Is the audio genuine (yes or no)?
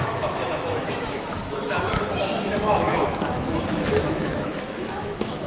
no